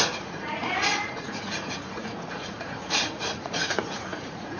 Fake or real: fake